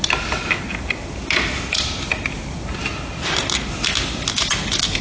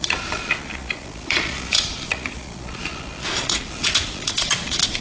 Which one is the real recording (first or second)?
first